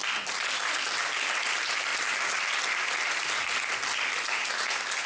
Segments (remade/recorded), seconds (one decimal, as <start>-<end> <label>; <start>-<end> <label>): 0.0-5.1 recorded